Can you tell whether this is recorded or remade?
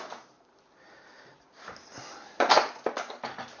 recorded